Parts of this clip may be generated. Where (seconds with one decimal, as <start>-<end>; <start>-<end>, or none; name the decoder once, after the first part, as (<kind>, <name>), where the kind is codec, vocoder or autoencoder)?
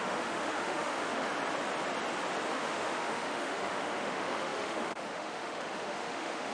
0.0-1.3 (autoencoder, DAC-VAE); 2.5-6.5